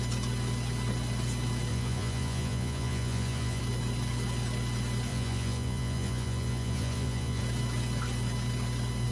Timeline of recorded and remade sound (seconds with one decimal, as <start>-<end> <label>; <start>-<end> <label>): 0.0-1.7 recorded; 1.7-3.6 remade; 3.6-5.1 recorded; 5.1-7.4 remade; 7.4-9.1 recorded